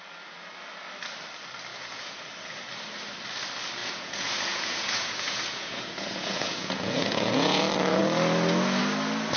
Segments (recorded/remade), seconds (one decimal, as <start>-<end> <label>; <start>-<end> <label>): 0.0-1.7 recorded; 1.7-2.2 remade; 2.2-3.8 recorded; 3.8-7.6 remade; 7.6-9.4 recorded